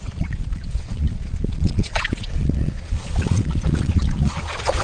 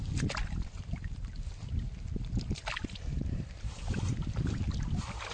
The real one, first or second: second